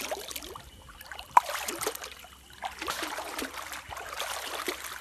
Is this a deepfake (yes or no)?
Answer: no